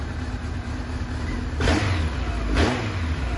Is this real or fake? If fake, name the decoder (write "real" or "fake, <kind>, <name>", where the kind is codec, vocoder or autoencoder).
real